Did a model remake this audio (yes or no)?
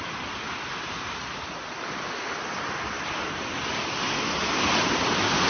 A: no